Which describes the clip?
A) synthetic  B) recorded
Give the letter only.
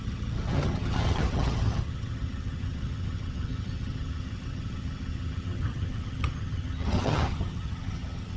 A